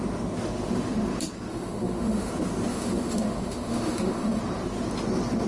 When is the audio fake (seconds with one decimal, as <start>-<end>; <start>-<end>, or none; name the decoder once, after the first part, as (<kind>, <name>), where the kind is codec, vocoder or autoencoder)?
1.5-2.3 (autoencoder, DAC-VAE); 2.7-4.4